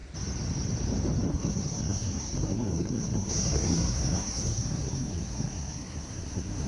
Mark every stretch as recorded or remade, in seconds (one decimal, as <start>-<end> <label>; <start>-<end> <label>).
0.0-1.3 recorded; 1.3-6.7 remade

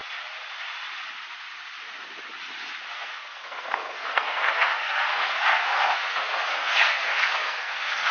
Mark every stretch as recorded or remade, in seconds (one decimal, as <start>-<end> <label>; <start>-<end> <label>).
0.0-2.9 recorded; 2.9-8.1 remade

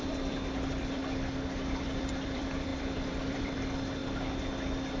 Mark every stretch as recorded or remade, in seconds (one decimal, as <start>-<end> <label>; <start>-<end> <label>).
0.0-1.0 remade; 1.0-1.8 recorded; 1.8-4.0 remade; 4.0-5.0 recorded